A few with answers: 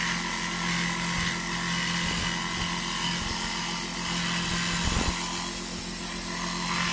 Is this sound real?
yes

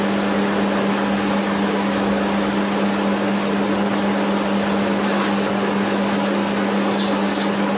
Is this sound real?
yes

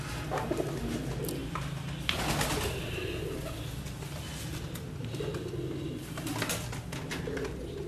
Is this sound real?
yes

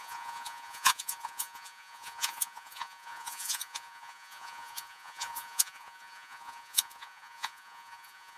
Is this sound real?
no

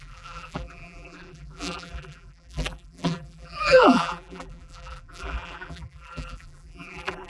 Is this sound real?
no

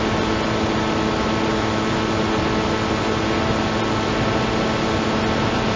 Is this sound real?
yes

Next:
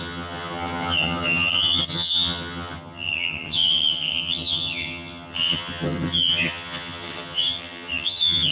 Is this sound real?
no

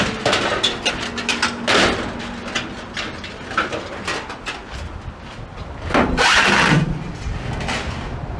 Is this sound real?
yes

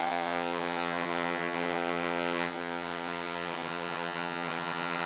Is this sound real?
no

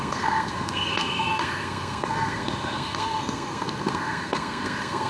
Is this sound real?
no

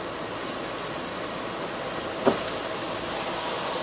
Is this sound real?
yes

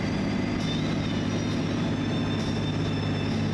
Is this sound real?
yes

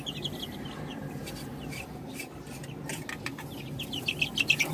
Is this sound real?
yes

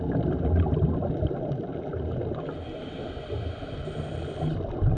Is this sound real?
yes